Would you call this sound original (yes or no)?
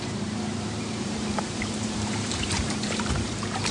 no